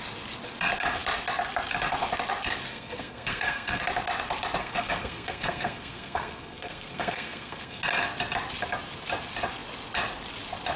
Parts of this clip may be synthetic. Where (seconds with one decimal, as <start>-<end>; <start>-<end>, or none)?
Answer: 2.7-3.8; 4.6-7.8